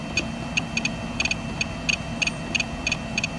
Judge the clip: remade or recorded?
recorded